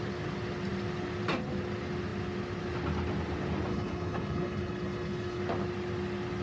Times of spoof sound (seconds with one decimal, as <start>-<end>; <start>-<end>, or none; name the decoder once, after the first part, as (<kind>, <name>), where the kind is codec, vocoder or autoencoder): 3.7-5.4 (codec, HILCodec)